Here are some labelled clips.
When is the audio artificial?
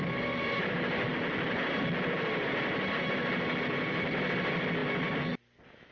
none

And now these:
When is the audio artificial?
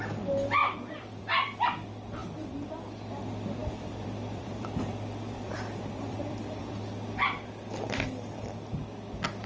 0.6-1.6 (vocoder, BigVGAN v2); 3.6-6.8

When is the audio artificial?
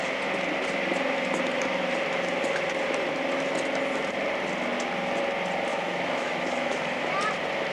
5.7-7.0 (autoencoder, DAC-VAE)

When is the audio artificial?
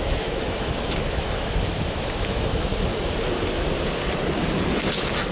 0.0-2.7 (autoencoder, DAC-VAE); 4.8-5.3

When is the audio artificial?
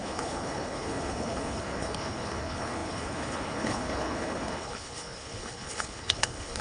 0.0-6.6 (codec, HILCodec)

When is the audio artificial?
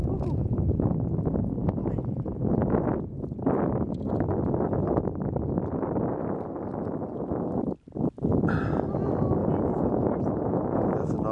0.0-0.6 (vocoder, Vocos); 9.4-10.9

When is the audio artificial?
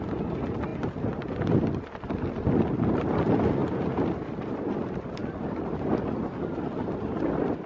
none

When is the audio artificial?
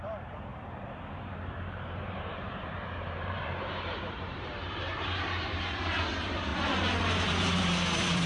0.0-0.5 (vocoder, BigVGAN v2); 1.1-6.5; 7.1-8.3